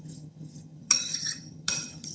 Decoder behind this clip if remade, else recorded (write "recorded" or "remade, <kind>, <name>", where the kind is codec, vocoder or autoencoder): remade, vocoder, HiFi-GAN